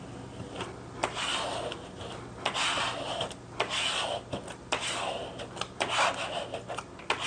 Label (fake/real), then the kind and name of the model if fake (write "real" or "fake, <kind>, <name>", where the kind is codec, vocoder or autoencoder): real